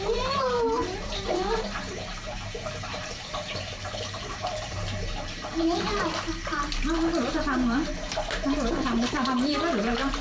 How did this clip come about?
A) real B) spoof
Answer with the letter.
B